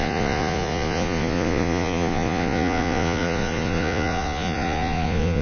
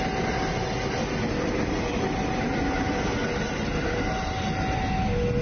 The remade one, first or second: first